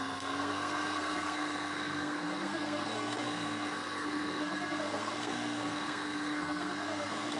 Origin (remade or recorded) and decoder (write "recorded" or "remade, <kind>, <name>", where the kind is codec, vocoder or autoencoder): remade, codec, SNAC